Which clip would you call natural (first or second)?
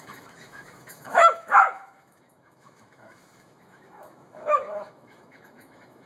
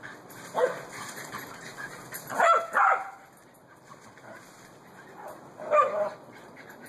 second